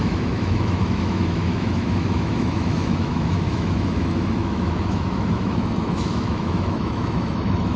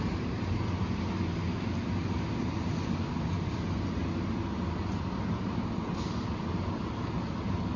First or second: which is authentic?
second